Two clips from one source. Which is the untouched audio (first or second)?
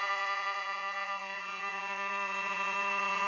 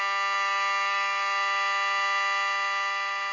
second